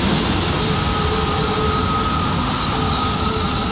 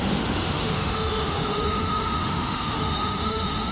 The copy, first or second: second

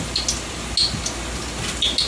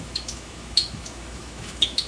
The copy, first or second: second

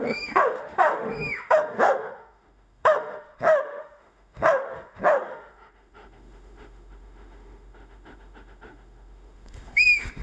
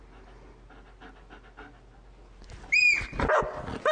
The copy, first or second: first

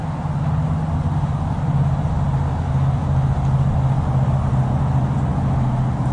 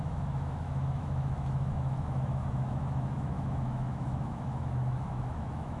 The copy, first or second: second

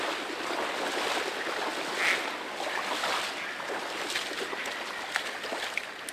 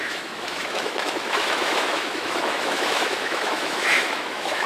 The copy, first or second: second